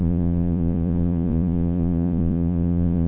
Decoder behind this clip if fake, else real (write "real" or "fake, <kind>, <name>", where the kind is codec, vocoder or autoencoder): fake, vocoder, Vocos